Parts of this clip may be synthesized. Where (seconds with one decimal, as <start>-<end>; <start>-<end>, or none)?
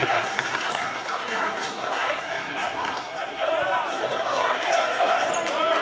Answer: 0.0-3.5; 3.9-5.3